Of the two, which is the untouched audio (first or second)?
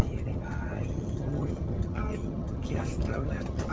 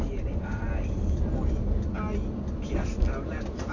second